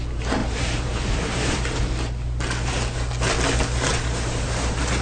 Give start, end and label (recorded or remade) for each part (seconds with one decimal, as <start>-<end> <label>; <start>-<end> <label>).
0.0-0.4 recorded; 0.4-1.8 remade; 1.8-3.9 recorded; 3.9-5.0 remade